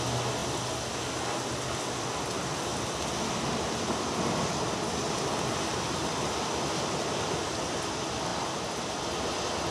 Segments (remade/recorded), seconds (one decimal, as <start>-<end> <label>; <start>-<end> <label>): 0.0-9.7 recorded